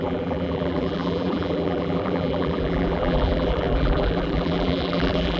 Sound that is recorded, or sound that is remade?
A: remade